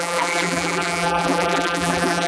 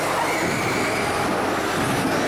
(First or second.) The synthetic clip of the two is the first